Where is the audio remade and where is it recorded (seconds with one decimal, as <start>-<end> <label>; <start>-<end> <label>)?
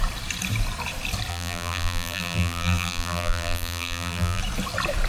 0.0-1.3 recorded; 1.3-4.4 remade; 4.4-5.1 recorded